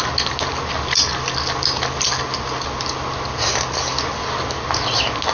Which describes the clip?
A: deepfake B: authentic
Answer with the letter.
B